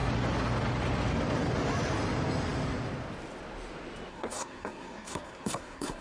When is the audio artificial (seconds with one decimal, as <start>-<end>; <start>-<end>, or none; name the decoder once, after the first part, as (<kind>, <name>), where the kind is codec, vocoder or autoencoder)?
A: 4.1-6.0 (codec, SNAC)